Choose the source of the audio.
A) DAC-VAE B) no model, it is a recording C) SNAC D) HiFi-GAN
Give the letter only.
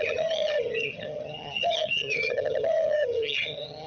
D